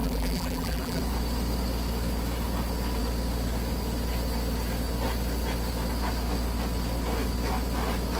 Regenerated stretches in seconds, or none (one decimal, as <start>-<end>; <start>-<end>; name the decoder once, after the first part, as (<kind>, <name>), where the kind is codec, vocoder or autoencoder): 0.0-1.0 (vocoder, BigVGAN v2)